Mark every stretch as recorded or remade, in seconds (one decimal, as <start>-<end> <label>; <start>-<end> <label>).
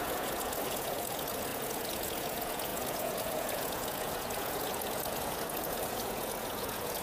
0.0-7.0 remade